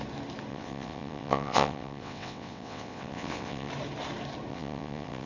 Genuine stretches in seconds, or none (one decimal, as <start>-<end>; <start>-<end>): 0.0-0.5; 3.7-4.5

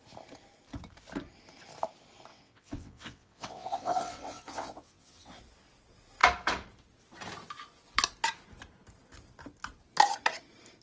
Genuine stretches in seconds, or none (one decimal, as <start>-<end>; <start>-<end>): 0.0-2.3; 5.4-10.8

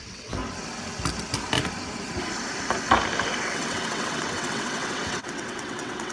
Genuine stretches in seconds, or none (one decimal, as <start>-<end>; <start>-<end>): 0.4-3.4

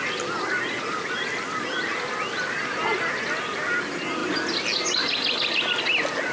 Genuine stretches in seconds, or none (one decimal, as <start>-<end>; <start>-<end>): 0.0-6.3

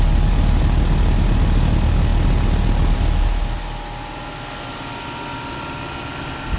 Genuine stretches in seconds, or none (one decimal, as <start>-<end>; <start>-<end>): 0.0-6.6

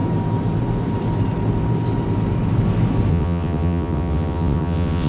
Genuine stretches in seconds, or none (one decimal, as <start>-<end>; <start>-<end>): 0.0-3.1

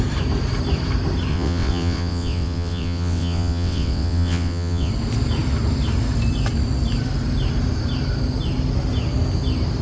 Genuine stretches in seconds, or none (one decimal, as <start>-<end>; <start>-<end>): 0.0-1.3; 4.9-9.8

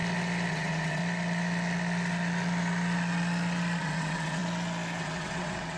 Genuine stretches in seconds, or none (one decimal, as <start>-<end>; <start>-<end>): 0.0-0.5; 1.0-3.8; 4.4-5.0